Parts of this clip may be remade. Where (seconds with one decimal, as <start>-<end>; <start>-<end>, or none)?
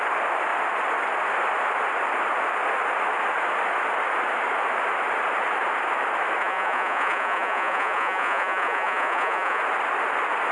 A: 6.4-9.6